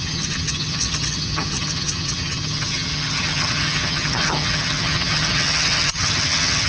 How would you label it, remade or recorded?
remade